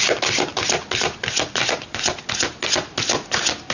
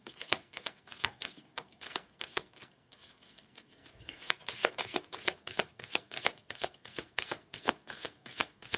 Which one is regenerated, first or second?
second